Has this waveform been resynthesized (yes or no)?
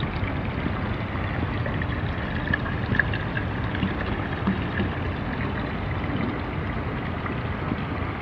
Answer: no